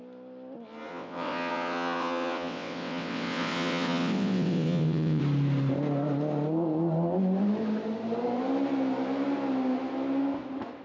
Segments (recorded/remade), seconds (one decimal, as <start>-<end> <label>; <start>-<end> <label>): 0.0-0.9 recorded; 0.9-5.2 remade; 5.2-10.8 recorded